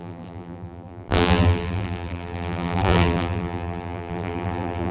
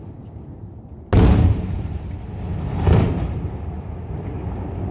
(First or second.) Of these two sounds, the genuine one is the second